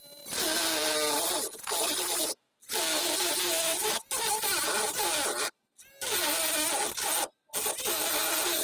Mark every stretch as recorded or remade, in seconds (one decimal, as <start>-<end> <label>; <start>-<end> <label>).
0.0-8.6 recorded